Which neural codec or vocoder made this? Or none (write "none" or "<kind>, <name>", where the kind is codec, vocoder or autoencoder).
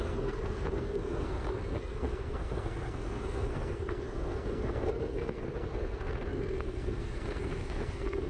codec, SNAC